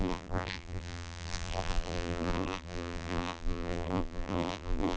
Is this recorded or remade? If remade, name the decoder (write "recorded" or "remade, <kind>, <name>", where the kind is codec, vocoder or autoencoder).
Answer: remade, vocoder, BigVGAN v2